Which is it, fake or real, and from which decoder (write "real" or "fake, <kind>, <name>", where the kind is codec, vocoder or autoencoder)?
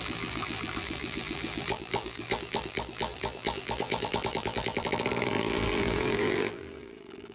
fake, vocoder, BigVGAN v2